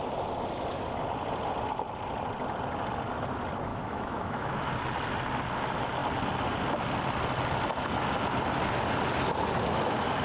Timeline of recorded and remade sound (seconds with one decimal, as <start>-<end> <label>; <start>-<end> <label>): 0.0-3.7 recorded; 3.7-4.7 remade; 4.7-10.2 recorded